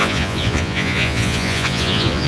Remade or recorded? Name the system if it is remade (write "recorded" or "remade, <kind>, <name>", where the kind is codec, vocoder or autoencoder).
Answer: remade, vocoder, Vocos